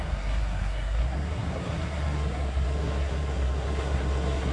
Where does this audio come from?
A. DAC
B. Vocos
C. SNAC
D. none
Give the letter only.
C